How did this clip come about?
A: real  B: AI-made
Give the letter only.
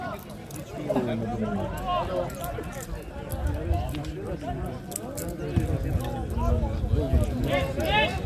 A